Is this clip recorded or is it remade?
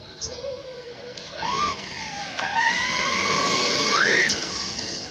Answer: remade